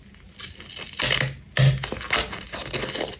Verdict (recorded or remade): recorded